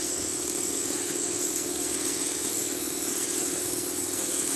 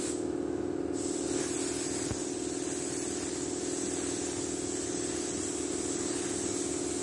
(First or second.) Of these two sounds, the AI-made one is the first